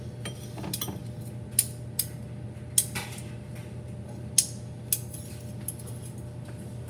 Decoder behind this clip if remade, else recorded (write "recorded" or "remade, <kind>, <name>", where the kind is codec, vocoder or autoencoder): recorded